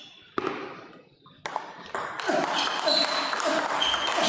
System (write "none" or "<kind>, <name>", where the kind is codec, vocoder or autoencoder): none